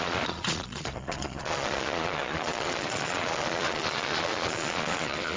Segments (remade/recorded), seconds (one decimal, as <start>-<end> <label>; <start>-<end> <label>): 0.0-5.4 remade